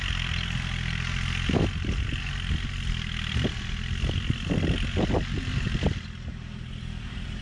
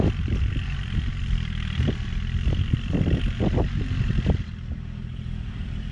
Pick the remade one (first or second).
second